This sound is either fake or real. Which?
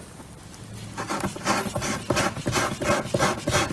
real